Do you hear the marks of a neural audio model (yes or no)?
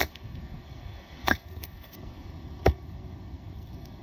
yes